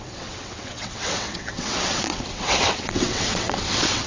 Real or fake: fake